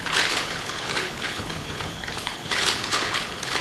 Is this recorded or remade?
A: remade